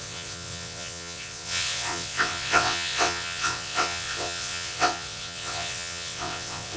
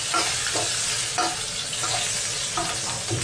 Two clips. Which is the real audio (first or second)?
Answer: second